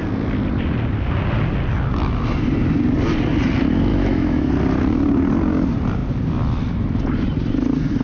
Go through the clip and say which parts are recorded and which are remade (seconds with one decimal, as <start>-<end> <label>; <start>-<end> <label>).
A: 0.0-3.9 recorded; 3.9-4.5 remade; 4.5-8.0 recorded